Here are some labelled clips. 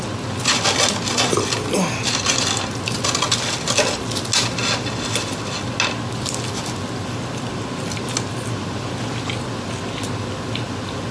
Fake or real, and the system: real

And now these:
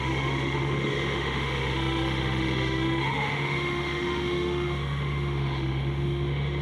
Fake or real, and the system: fake, autoencoder, DAC-VAE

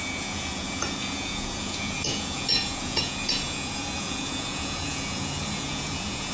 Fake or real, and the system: fake, vocoder, Vocos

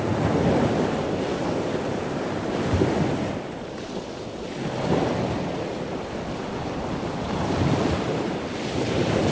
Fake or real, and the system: real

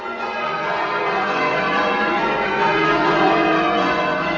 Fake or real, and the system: fake, vocoder, Vocos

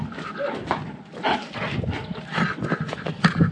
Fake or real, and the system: real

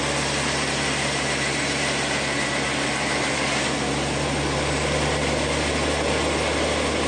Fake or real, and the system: real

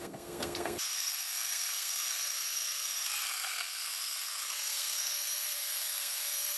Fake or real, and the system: fake, codec, SNAC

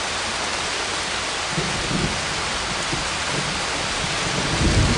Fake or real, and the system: real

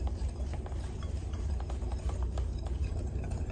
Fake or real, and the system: fake, vocoder, BigVGAN v2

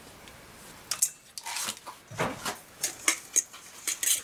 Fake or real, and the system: real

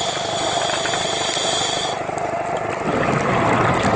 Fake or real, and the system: real